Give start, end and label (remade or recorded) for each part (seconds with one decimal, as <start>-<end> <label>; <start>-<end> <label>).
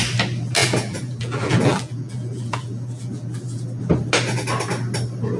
0.0-0.6 recorded; 0.6-3.8 remade; 3.8-5.4 recorded